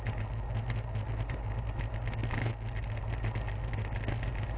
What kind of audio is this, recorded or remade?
recorded